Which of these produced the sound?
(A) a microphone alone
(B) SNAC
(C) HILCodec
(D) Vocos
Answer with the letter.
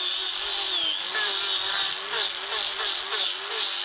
A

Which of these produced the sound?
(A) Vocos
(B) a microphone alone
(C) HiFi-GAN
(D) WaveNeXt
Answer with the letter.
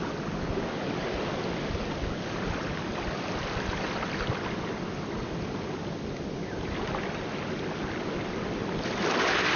B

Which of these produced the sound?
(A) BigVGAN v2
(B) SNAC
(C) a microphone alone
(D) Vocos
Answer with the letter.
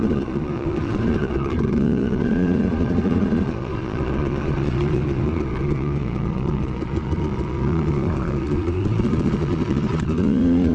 D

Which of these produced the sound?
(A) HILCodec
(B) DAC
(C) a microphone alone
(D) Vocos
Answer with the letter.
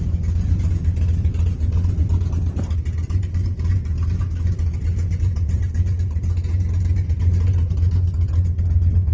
C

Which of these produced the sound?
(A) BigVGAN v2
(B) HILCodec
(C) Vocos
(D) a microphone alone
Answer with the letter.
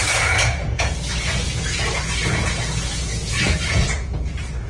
C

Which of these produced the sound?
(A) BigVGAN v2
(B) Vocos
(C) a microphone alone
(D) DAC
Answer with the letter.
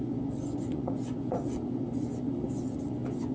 B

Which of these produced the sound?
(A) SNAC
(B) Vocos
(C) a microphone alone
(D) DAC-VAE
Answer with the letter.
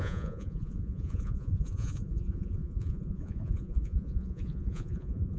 B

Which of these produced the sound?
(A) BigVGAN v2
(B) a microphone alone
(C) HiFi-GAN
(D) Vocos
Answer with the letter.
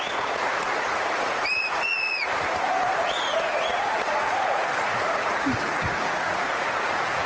D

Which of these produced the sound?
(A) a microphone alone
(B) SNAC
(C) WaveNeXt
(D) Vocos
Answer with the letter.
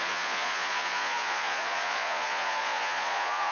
D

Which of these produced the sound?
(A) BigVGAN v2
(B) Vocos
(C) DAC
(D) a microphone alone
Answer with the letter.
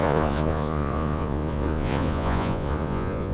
B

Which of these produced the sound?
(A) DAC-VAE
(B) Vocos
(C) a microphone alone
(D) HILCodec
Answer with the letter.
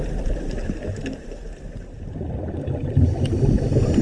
C